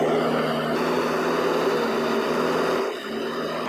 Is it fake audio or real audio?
real